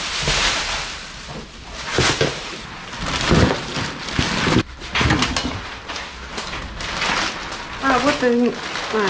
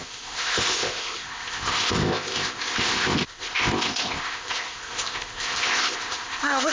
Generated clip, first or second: second